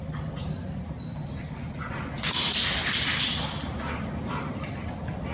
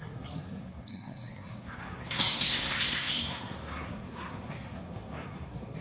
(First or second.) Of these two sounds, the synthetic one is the second